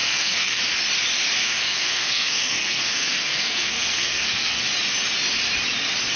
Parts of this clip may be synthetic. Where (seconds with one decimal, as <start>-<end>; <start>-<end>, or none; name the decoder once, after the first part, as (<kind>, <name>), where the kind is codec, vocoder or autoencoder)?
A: 0.0-0.6 (codec, SNAC); 1.4-4.6